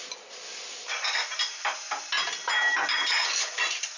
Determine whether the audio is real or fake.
real